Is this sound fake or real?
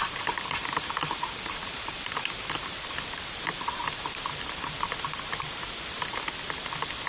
fake